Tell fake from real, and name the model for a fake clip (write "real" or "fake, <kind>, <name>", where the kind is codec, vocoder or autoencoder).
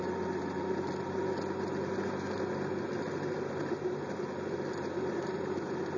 real